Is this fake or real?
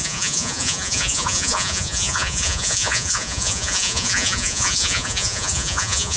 fake